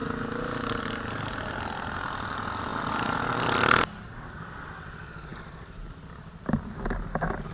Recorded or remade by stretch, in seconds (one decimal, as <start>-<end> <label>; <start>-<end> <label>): 0.0-7.5 recorded